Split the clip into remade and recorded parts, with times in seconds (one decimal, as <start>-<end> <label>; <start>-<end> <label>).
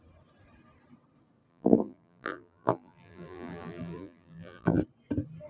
0.0-1.5 recorded; 1.5-4.8 remade; 4.8-5.5 recorded